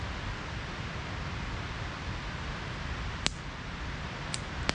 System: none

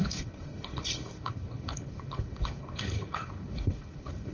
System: codec, HILCodec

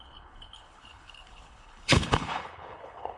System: codec, HILCodec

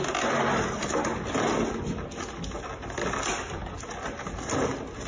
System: none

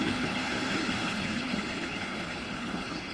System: codec, HILCodec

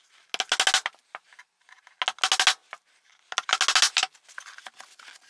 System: none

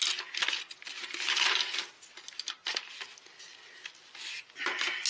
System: none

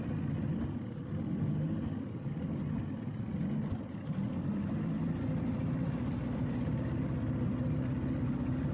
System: none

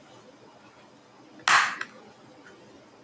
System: none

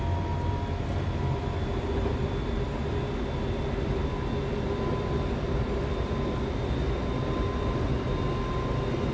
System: none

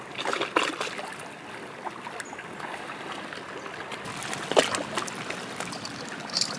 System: none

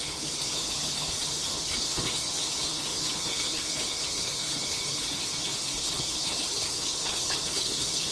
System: codec, HILCodec